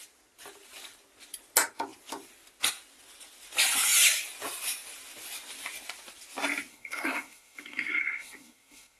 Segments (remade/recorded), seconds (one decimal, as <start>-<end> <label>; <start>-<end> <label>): 0.0-6.7 recorded; 6.7-9.0 remade